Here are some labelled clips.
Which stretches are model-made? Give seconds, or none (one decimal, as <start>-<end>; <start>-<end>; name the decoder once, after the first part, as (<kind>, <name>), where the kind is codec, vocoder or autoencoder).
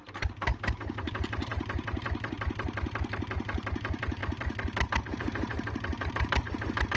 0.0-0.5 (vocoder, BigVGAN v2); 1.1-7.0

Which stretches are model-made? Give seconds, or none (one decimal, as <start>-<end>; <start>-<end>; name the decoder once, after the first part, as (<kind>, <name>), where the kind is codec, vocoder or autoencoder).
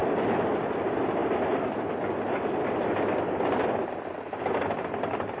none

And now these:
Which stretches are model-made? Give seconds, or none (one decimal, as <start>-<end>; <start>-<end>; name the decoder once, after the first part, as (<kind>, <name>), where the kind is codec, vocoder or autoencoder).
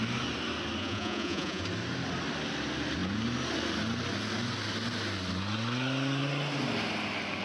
0.8-1.6 (vocoder, Vocos)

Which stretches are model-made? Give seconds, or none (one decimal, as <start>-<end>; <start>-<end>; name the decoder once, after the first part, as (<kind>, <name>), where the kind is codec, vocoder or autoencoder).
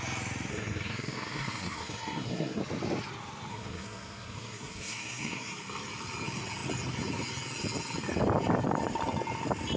0.5-2.6 (codec, SNAC); 3.5-5.5